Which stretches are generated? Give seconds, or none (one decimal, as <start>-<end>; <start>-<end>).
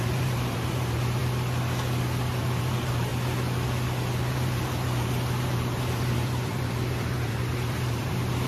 0.0-1.2; 2.4-3.1; 4.3-8.5